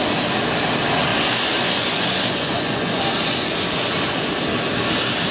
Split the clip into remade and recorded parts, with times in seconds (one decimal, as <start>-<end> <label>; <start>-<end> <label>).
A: 0.0-1.1 recorded; 1.1-4.3 remade; 4.3-5.3 recorded